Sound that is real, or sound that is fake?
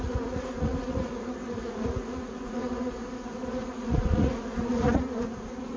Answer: fake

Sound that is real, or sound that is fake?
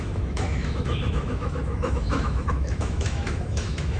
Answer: fake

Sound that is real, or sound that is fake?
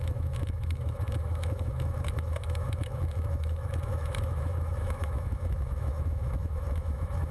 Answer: fake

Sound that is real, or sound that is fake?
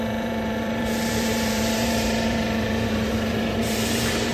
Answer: fake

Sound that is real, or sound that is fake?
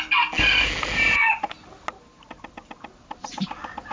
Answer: real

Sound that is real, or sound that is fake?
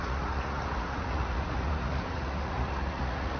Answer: fake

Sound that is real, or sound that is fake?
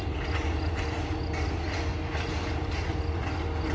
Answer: real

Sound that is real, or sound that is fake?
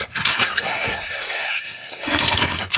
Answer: fake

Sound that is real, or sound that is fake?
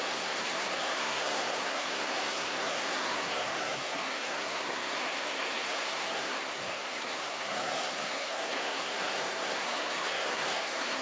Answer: fake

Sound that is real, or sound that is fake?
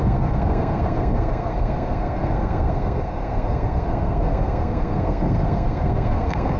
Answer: fake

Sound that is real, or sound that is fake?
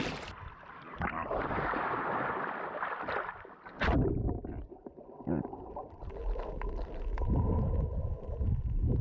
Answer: fake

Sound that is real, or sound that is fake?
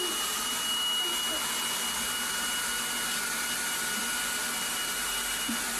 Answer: real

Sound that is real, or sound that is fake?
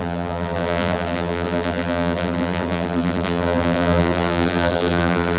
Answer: fake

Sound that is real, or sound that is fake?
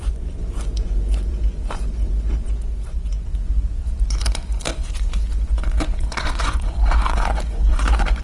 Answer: fake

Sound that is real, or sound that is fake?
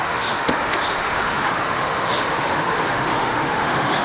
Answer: fake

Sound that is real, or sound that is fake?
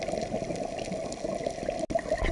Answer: real